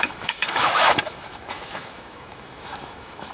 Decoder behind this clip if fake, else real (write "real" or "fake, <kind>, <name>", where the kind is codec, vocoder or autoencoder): fake, autoencoder, DAC-VAE